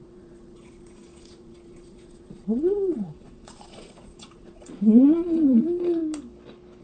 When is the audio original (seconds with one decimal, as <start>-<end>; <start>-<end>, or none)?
6.0-6.8